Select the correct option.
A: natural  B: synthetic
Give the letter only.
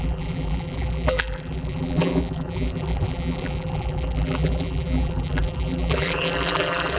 B